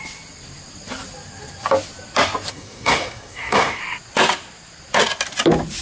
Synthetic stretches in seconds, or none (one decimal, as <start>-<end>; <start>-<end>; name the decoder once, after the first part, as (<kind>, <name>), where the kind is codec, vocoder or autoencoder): 2.5-3.8 (codec, SNAC)